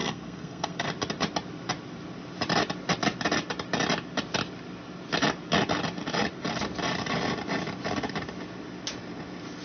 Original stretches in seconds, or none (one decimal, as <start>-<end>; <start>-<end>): 0.9-9.6